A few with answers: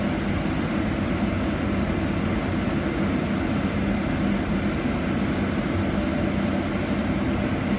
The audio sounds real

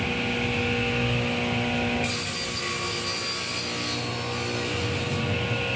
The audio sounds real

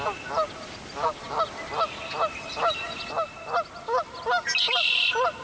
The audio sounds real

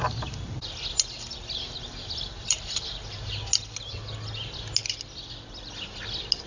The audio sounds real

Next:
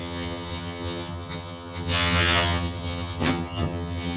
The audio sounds fake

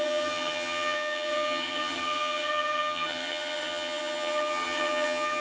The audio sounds fake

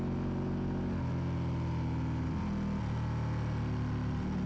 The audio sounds real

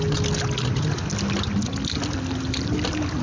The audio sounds real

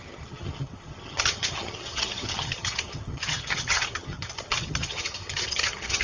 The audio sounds fake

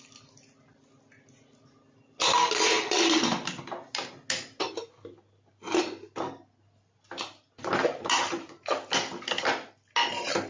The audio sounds real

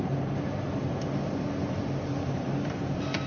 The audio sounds real